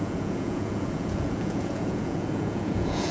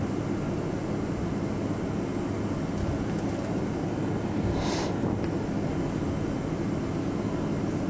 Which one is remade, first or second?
first